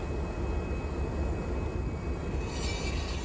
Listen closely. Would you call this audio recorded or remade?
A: recorded